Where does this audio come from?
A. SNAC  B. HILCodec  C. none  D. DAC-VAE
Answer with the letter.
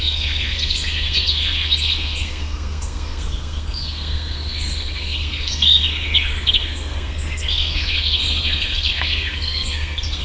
A